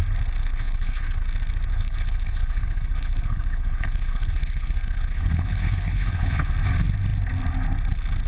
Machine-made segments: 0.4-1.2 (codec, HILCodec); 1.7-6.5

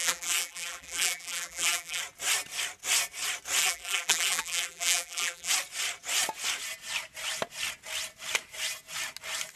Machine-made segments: 0.0-2.0 (vocoder, BigVGAN v2); 3.6-5.5

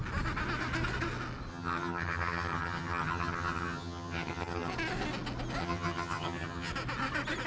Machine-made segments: 1.5-4.7 (vocoder, HiFi-GAN); 5.6-6.7

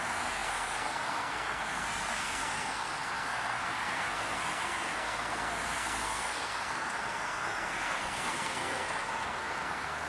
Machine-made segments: 0.0-10.1 (codec, SNAC)

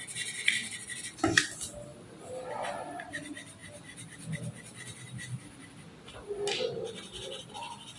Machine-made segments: none

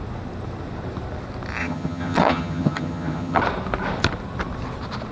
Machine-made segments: 1.6-3.4 (vocoder, HiFi-GAN)

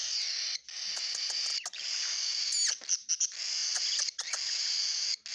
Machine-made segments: none